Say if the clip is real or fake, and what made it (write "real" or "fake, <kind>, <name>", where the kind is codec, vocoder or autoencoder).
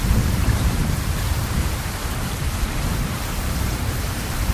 fake, vocoder, BigVGAN v2